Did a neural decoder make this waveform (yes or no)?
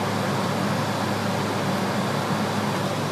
no